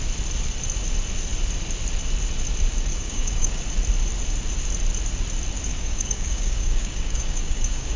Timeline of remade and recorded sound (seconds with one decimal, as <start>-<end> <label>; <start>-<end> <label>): 0.0-2.9 recorded; 2.9-3.6 remade; 3.6-5.7 recorded; 5.7-8.0 remade